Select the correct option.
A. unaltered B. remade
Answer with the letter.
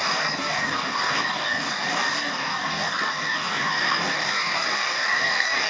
B